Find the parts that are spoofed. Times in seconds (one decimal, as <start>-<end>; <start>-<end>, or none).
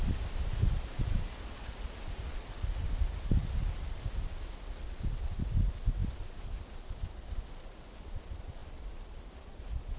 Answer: 0.0-3.1; 8.6-9.2